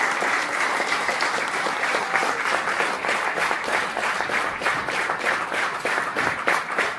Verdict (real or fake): fake